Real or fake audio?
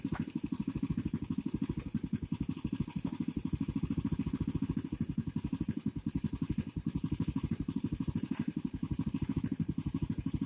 fake